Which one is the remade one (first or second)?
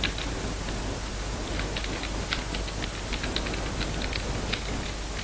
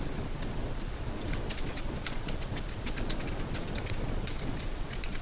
second